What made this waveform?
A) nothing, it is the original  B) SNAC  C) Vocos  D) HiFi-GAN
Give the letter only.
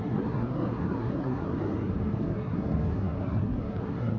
B